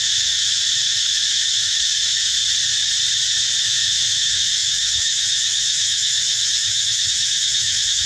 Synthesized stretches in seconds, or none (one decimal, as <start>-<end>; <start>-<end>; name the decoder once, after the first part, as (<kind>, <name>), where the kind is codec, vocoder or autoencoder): 0.0-2.4 (autoencoder, DAC-VAE); 3.6-8.1